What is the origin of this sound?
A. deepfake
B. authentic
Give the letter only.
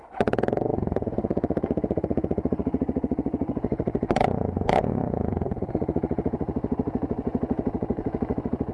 A